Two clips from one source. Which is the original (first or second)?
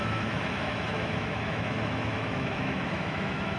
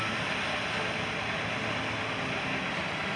second